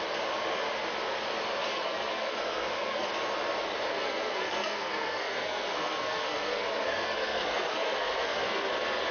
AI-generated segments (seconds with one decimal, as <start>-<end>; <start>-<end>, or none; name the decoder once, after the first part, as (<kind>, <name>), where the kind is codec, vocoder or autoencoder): 1.7-3.1 (codec, SNAC); 3.9-8.7